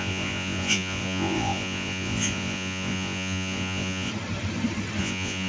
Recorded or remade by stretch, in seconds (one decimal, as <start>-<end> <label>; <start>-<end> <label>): 0.0-4.1 remade; 4.1-5.0 recorded; 5.0-5.5 remade